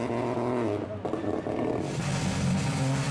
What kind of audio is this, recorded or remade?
recorded